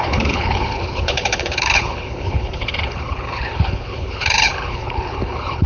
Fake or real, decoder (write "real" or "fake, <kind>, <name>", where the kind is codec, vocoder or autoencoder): fake, codec, HILCodec